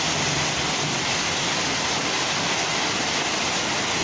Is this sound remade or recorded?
recorded